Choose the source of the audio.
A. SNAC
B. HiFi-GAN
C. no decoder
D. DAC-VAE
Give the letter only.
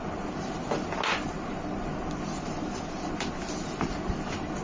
C